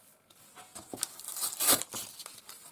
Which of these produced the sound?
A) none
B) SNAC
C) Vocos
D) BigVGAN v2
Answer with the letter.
A